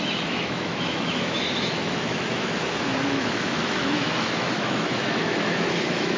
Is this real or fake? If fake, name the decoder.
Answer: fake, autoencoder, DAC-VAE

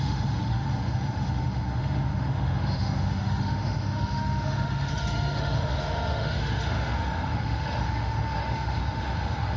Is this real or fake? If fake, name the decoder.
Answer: fake, autoencoder, DAC-VAE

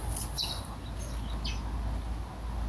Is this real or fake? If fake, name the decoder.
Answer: real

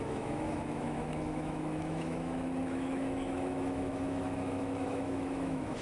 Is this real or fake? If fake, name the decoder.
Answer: fake, autoencoder, DAC-VAE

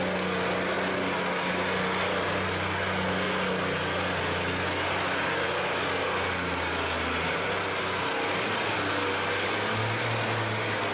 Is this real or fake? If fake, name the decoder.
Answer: real